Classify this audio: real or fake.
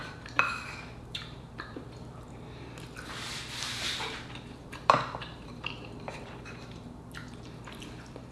fake